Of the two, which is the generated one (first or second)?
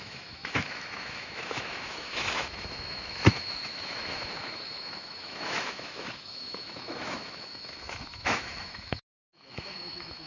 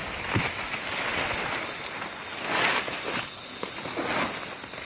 first